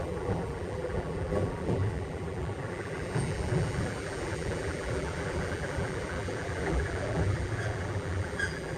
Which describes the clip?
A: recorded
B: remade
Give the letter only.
B